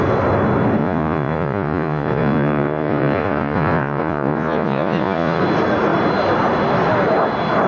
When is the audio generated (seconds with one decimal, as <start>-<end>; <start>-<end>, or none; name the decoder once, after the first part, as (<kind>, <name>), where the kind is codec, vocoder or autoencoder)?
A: 0.8-5.4 (vocoder, Vocos)